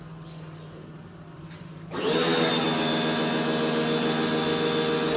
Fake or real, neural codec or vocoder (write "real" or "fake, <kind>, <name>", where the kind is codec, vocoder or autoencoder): real